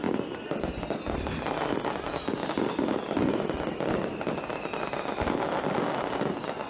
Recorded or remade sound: recorded